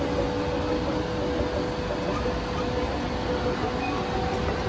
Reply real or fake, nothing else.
real